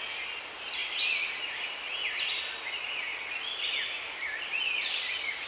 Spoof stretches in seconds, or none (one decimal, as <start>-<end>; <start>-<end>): none